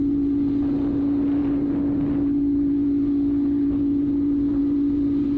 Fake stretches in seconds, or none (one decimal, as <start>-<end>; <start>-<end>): none